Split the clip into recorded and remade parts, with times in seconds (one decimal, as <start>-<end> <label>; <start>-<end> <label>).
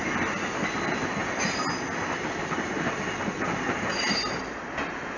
0.0-5.2 recorded